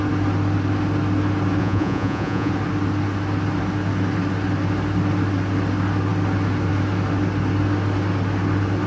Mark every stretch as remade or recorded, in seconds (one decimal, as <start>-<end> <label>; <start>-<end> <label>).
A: 0.0-1.6 recorded; 1.6-2.5 remade; 2.5-8.9 recorded